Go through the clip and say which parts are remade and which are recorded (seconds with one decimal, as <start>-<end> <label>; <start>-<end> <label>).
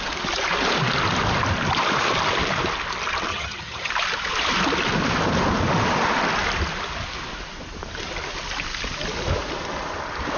0.0-3.3 recorded; 3.3-3.9 remade; 3.9-10.4 recorded